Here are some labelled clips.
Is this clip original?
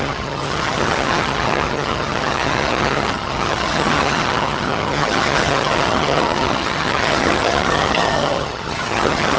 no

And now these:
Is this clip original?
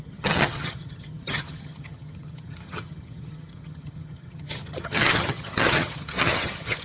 no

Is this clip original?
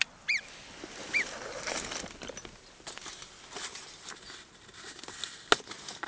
yes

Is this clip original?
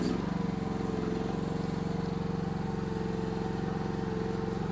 yes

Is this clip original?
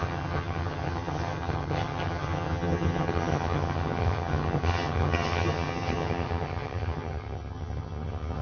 no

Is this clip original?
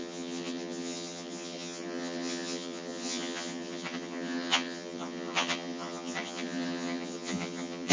no